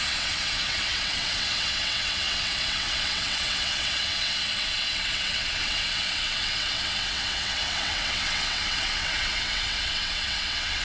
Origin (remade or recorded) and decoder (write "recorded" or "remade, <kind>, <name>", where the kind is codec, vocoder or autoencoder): remade, vocoder, WaveNeXt